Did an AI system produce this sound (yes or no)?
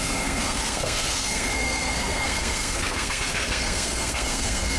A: yes